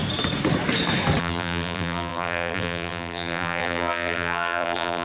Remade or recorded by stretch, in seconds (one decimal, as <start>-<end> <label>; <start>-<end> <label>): 0.0-1.2 recorded; 1.2-5.0 remade